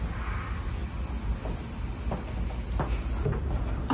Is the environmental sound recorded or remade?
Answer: recorded